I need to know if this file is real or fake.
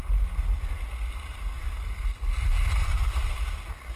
real